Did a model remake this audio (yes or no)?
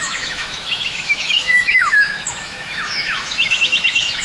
yes